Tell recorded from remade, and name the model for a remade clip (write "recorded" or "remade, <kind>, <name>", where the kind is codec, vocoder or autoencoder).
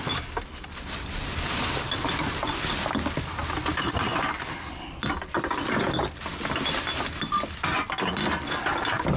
recorded